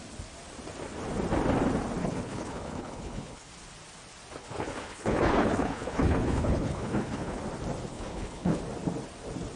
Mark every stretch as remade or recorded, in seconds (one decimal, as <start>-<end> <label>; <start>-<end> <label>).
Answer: 0.0-2.0 recorded; 2.0-3.5 remade; 3.5-4.4 recorded; 4.4-7.4 remade; 7.4-7.9 recorded; 7.9-8.6 remade; 8.6-9.6 recorded

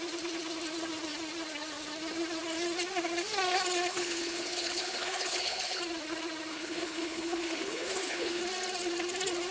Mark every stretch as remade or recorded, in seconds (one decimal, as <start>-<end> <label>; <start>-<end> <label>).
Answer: 0.0-3.9 recorded; 3.9-5.8 remade; 5.8-6.5 recorded; 6.5-8.4 remade; 8.4-9.5 recorded

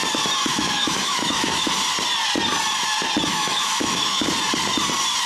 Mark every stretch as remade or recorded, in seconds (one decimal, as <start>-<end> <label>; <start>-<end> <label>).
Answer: 0.0-0.5 recorded; 0.5-1.7 remade; 1.7-3.3 recorded; 3.3-4.3 remade; 4.3-5.3 recorded

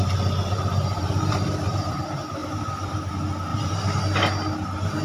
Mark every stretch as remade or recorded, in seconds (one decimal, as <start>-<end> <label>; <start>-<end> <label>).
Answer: 0.0-0.5 recorded; 0.5-2.0 remade; 2.0-2.4 recorded; 2.4-3.1 remade; 3.1-3.5 recorded; 3.5-4.0 remade; 4.0-5.0 recorded

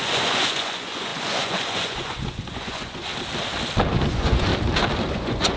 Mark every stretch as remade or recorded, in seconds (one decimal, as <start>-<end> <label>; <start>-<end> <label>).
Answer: 0.0-3.1 remade; 3.1-4.1 recorded; 4.1-4.5 remade; 4.5-5.1 recorded; 5.1-5.6 remade

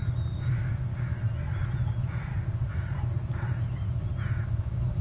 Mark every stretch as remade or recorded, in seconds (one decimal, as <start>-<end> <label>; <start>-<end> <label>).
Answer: 0.0-5.0 recorded